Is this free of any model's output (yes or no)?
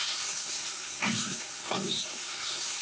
no